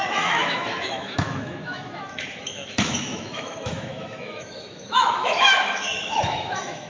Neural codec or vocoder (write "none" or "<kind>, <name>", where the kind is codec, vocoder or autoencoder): autoencoder, DAC-VAE